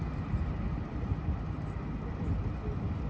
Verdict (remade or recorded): recorded